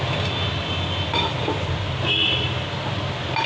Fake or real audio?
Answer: real